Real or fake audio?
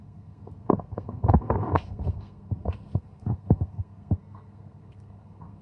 fake